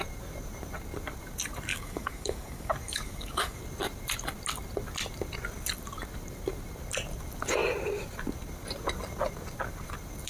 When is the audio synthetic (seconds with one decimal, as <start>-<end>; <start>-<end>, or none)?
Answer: 1.7-3.6